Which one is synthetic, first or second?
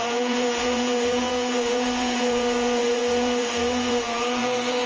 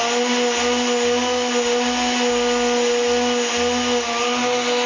first